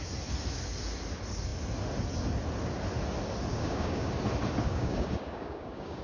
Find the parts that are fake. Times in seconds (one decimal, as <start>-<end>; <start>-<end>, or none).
3.5-4.1; 4.7-6.0